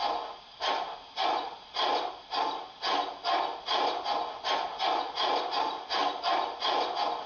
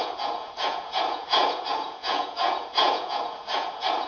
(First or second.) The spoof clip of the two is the second